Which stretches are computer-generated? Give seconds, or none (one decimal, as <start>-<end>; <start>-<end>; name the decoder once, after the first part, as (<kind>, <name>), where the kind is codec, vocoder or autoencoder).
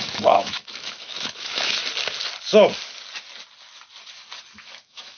0.0-1.8 (autoencoder, DAC-VAE); 4.6-5.2